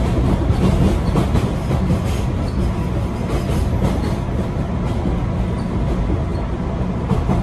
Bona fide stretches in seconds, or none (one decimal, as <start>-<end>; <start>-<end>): 0.0-7.4

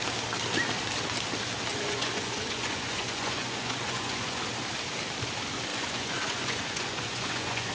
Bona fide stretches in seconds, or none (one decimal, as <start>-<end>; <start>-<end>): 0.0-1.7; 4.4-5.7

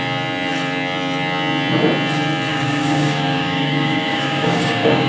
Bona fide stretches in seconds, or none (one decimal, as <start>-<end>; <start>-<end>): 0.0-2.5

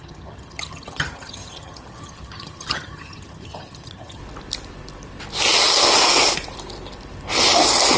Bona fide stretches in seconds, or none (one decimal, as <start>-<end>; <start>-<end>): 4.2-8.0